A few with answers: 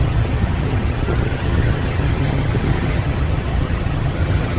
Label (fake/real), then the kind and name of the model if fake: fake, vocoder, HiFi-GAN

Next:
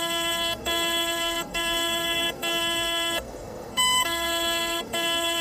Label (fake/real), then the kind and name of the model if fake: fake, codec, SNAC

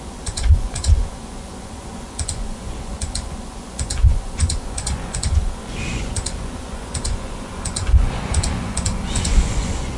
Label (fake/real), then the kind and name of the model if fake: fake, vocoder, Vocos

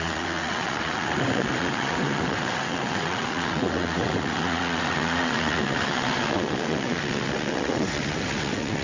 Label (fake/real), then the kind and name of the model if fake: fake, vocoder, WaveNeXt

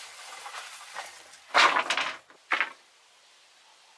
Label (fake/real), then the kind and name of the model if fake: real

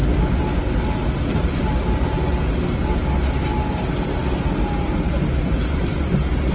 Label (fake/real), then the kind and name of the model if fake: real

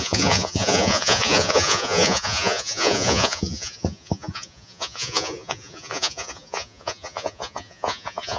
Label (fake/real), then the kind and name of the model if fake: fake, vocoder, Vocos